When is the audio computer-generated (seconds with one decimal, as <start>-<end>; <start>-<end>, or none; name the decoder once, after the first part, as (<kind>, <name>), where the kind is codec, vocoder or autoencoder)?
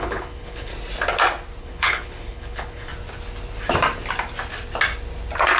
0.0-0.7 (codec, HILCodec); 1.6-2.9